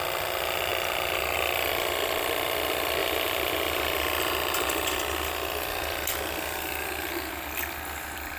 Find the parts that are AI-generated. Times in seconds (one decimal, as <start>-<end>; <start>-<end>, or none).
3.0-4.7